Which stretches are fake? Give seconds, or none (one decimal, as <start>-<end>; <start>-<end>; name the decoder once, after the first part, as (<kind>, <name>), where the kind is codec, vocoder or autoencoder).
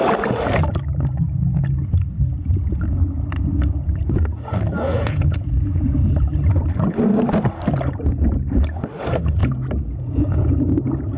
4.9-6.1 (vocoder, Vocos); 9.4-10.6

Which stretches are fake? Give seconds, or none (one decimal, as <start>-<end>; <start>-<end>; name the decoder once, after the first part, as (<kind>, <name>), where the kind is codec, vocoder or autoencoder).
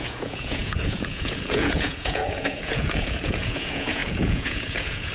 0.0-5.1 (vocoder, Vocos)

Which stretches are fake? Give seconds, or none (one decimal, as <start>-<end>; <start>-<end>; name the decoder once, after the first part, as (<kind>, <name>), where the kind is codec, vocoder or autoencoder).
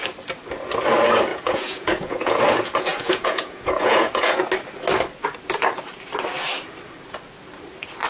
1.3-2.4 (vocoder, Vocos); 2.9-4.4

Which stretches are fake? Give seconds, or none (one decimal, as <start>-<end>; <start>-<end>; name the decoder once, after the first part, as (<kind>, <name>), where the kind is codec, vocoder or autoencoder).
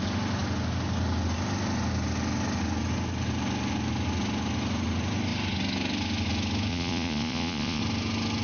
6.7-7.8 (vocoder, Vocos)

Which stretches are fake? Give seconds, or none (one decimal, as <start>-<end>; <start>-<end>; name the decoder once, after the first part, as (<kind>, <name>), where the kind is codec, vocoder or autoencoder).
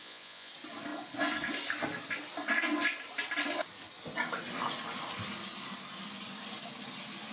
0.0-0.5 (vocoder, Vocos)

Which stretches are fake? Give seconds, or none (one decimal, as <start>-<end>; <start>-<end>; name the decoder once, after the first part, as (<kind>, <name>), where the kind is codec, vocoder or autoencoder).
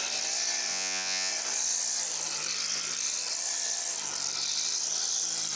0.7-1.3 (vocoder, Vocos)